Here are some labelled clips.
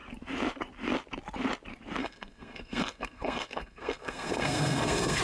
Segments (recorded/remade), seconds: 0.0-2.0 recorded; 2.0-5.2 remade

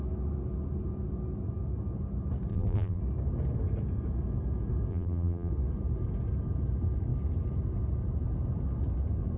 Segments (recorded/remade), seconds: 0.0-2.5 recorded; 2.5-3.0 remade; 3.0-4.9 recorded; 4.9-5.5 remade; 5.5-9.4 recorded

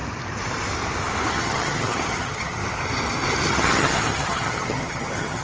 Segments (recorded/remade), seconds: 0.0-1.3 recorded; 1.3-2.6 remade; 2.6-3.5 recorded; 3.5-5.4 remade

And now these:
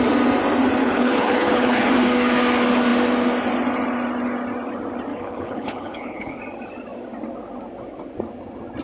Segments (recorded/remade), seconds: 0.0-0.8 recorded; 0.8-1.9 remade; 1.9-5.1 recorded; 5.1-6.4 remade; 6.4-8.8 recorded

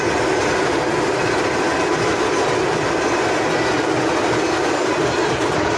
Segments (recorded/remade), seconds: 0.0-0.4 recorded; 0.4-1.2 remade; 1.2-5.8 recorded

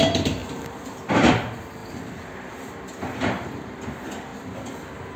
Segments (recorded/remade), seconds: 0.0-2.9 recorded; 2.9-3.7 remade; 3.7-4.3 recorded; 4.3-4.8 remade; 4.8-5.2 recorded

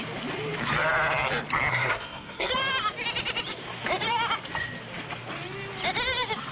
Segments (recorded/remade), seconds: 0.0-1.7 recorded; 1.7-2.5 remade; 2.5-6.5 recorded